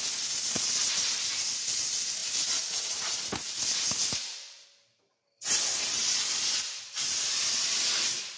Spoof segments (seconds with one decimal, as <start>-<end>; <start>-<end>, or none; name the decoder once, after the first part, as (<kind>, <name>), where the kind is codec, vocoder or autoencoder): 4.0-6.0 (vocoder, BigVGAN v2)